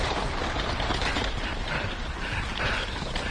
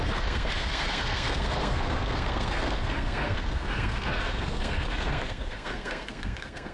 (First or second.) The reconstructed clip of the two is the second